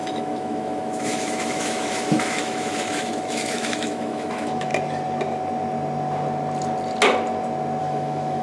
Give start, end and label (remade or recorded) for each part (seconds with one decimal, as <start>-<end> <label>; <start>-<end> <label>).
0.0-4.7 remade; 4.7-7.8 recorded; 7.8-8.4 remade

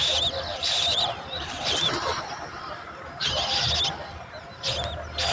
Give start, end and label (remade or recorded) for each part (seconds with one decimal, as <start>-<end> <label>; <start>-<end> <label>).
0.0-0.5 recorded; 0.5-3.7 remade; 3.7-5.3 recorded

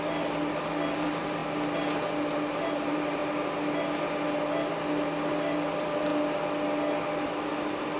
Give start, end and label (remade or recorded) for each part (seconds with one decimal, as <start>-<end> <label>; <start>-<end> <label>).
0.0-1.4 remade; 1.4-2.6 recorded; 2.6-3.2 remade; 3.2-5.3 recorded; 5.3-6.1 remade; 6.1-8.0 recorded

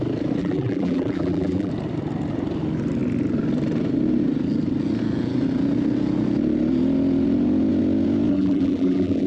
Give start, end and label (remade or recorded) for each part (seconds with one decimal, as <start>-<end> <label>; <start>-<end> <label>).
0.0-0.4 recorded; 0.4-1.7 remade; 1.7-8.3 recorded; 8.3-9.3 remade

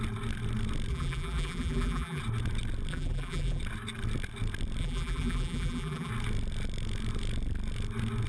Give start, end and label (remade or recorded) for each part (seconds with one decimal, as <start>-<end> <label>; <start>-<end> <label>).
0.0-0.9 recorded; 0.9-2.2 remade; 2.2-2.9 recorded; 2.9-3.6 remade; 3.6-4.8 recorded; 4.8-6.1 remade; 6.1-8.3 recorded

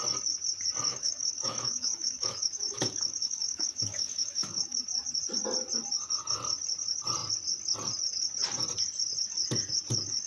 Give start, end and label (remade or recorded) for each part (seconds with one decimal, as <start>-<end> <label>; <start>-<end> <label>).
0.0-0.9 recorded; 0.9-4.8 remade; 4.8-10.3 recorded